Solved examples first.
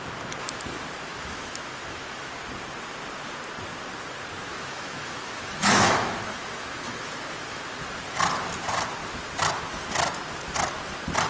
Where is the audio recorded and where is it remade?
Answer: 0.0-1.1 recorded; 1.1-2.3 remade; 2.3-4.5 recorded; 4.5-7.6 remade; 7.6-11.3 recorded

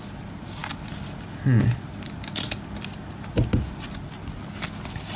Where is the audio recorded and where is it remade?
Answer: 0.0-5.2 recorded

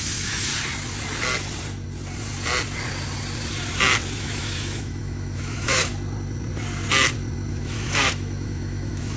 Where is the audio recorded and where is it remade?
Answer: 0.0-0.5 remade; 0.5-4.2 recorded; 4.2-5.9 remade; 5.9-7.5 recorded; 7.5-9.2 remade